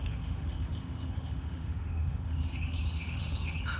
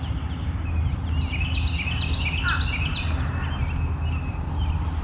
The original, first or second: second